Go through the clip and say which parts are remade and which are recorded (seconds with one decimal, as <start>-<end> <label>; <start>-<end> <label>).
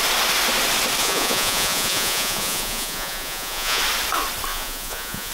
0.0-1.0 recorded; 1.0-3.8 remade; 3.8-4.5 recorded; 4.5-5.3 remade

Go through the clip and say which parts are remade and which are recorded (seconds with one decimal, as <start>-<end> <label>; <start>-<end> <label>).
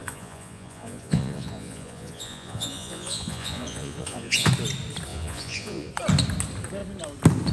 0.0-4.5 remade; 4.5-5.1 recorded; 5.1-5.9 remade; 5.9-7.5 recorded